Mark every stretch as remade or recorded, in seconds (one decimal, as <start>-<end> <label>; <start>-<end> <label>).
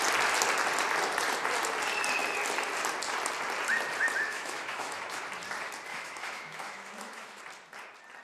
0.0-4.3 recorded; 4.3-5.2 remade; 5.2-5.9 recorded; 5.9-7.4 remade; 7.4-8.2 recorded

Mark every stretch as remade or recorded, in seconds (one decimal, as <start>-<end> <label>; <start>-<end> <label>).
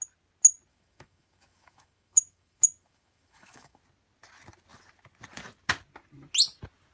0.0-0.7 recorded; 0.7-3.8 remade; 3.8-6.9 recorded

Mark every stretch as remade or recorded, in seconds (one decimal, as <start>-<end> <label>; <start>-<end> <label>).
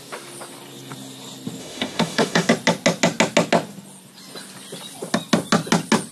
0.0-1.6 recorded; 1.6-2.5 remade; 2.5-6.1 recorded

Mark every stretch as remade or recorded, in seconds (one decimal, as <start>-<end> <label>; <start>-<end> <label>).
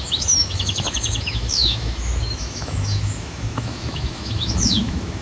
0.0-5.2 remade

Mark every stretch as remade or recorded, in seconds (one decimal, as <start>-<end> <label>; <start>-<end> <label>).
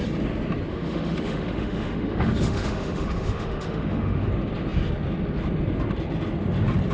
0.0-0.7 recorded; 0.7-4.3 remade; 4.3-6.9 recorded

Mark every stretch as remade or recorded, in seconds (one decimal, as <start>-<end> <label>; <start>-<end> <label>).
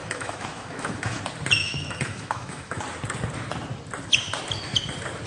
0.0-1.2 remade; 1.2-1.6 recorded; 1.6-2.8 remade; 2.8-5.3 recorded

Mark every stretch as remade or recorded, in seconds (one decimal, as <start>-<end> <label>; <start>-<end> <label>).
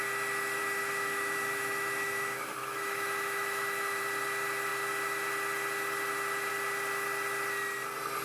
0.0-0.6 recorded; 0.6-4.0 remade; 4.0-8.2 recorded